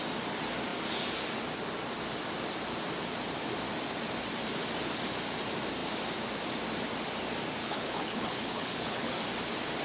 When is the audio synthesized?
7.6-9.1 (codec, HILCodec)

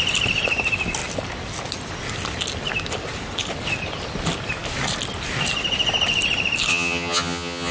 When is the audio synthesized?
6.7-7.7 (vocoder, HiFi-GAN)

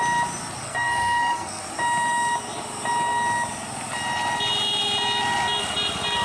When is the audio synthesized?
0.6-1.6 (codec, SNAC)

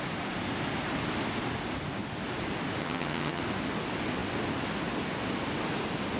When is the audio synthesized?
2.8-3.4 (vocoder, HiFi-GAN)